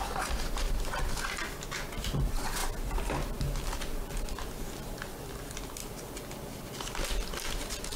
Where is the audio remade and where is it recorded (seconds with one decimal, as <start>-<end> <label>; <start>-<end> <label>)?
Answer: 0.0-1.4 remade; 1.4-2.0 recorded; 2.0-2.6 remade; 2.6-3.2 recorded; 3.2-8.0 remade